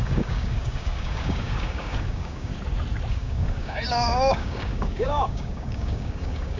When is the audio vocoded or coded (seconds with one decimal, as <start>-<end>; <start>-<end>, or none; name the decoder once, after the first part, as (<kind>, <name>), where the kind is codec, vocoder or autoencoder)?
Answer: 0.0-2.5 (codec, DAC); 3.1-6.6